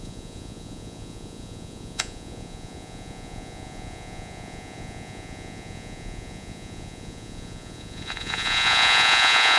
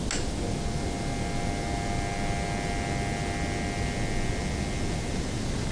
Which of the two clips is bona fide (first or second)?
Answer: second